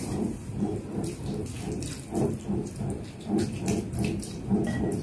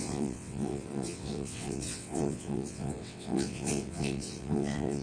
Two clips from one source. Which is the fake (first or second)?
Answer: second